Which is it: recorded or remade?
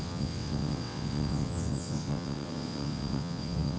remade